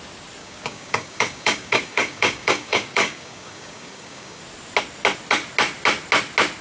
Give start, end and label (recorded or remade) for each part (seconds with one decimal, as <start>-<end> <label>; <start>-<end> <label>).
0.0-0.4 recorded; 0.4-4.4 remade; 4.4-6.6 recorded